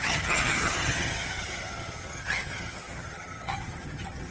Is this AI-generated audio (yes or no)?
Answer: yes